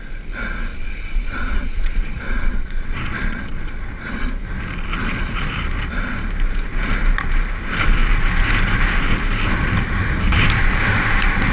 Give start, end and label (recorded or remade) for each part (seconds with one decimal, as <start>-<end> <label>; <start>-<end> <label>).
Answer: 0.0-0.7 recorded; 0.7-4.3 remade; 4.3-11.5 recorded